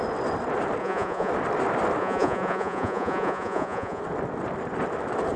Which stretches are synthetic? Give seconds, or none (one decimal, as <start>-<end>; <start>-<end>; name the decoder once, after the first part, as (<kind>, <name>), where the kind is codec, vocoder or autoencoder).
0.8-1.3 (vocoder, Vocos); 2.0-4.0